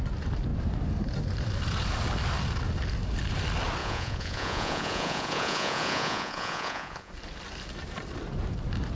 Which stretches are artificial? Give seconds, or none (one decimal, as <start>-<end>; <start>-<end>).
3.8-7.1